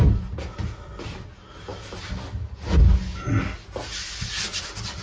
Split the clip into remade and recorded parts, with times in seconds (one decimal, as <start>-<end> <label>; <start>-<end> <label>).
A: 0.0-5.0 recorded